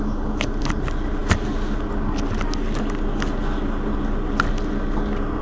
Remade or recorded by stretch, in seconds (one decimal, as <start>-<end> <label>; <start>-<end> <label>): 0.0-5.4 recorded